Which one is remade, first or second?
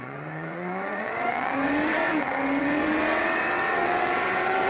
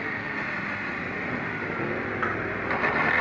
first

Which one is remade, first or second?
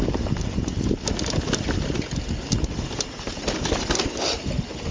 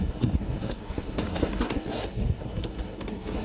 second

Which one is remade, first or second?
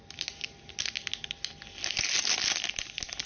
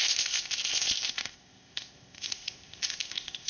second